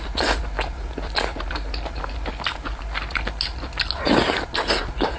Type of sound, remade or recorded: recorded